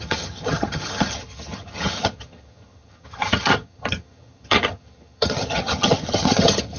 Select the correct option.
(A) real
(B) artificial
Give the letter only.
B